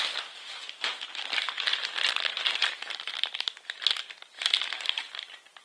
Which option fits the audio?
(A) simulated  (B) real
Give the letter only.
B